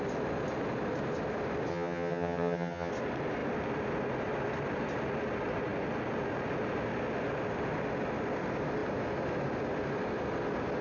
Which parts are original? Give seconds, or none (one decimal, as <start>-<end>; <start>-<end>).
0.0-1.7; 2.9-10.8